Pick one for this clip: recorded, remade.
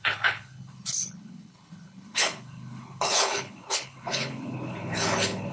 remade